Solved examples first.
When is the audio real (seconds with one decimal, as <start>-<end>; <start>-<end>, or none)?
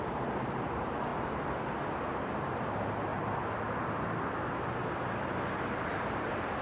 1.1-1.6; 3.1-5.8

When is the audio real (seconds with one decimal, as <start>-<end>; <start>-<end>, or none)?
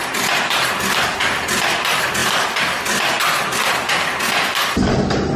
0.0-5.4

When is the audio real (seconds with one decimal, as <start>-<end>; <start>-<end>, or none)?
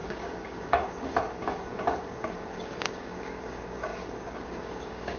none